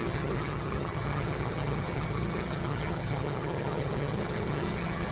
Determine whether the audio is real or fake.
fake